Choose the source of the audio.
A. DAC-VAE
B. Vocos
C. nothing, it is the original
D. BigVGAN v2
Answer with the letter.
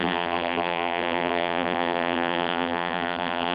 D